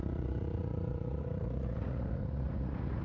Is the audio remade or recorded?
remade